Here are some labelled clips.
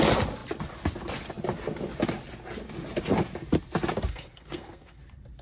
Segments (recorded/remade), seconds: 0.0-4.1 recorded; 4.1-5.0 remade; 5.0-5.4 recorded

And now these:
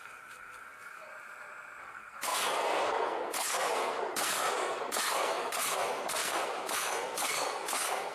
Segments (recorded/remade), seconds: 0.0-1.1 remade; 1.1-1.8 recorded; 1.8-8.1 remade

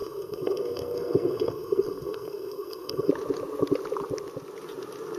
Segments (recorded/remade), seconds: 0.0-3.1 remade; 3.1-5.2 recorded

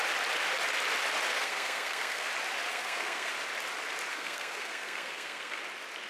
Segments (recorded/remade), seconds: 0.0-1.3 recorded; 1.3-2.3 remade; 2.3-2.7 recorded; 2.7-3.3 remade; 3.3-4.1 recorded; 4.1-5.6 remade; 5.6-6.1 recorded

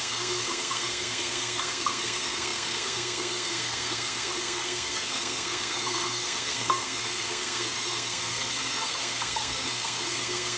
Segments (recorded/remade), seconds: 0.0-10.6 remade

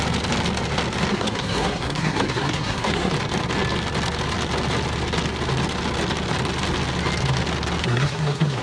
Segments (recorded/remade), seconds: 0.0-1.1 recorded; 1.1-3.1 remade; 3.1-7.8 recorded; 7.8-8.6 remade